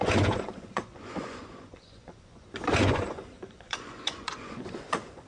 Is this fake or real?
fake